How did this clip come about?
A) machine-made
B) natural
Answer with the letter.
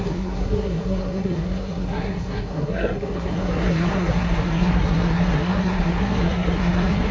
A